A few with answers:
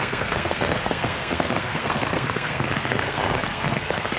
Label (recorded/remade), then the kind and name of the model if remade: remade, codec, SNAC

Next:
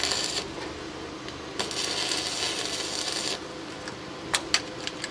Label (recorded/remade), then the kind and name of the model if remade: recorded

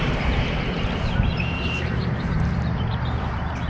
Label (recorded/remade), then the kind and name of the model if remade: remade, vocoder, BigVGAN v2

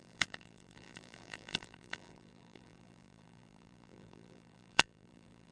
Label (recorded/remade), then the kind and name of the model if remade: remade, vocoder, BigVGAN v2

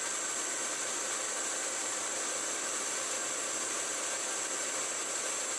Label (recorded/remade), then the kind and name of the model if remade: recorded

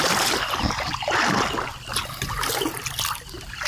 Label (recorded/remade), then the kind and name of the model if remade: recorded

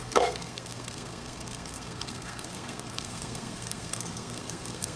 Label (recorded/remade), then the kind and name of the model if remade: remade, codec, SNAC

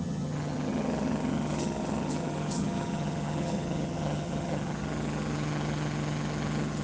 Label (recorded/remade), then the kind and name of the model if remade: remade, vocoder, HiFi-GAN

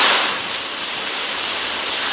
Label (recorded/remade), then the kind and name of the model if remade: recorded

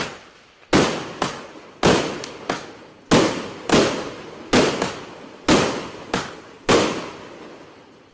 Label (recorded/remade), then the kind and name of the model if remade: recorded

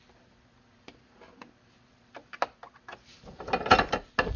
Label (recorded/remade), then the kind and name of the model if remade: recorded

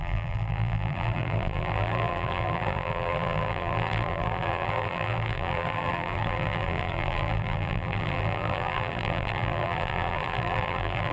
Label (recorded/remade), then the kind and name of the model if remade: remade, vocoder, BigVGAN v2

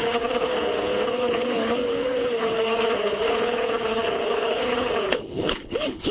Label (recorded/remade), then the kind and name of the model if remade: remade, codec, HILCodec